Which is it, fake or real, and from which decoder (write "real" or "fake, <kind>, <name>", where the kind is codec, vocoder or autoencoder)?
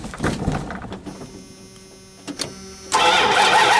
real